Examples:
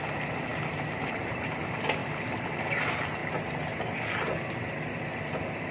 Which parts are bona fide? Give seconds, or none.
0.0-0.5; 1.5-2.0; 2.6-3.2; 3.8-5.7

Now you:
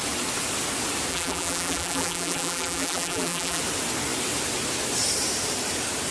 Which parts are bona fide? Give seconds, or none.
0.0-1.1; 3.6-6.1